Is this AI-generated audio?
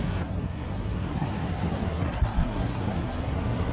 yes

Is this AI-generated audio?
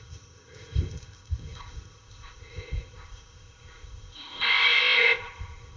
yes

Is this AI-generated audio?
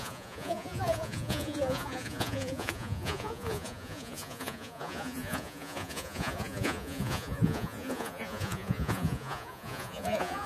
yes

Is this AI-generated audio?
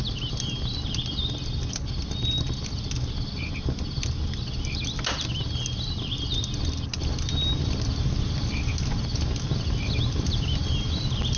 no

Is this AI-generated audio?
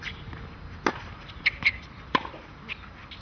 no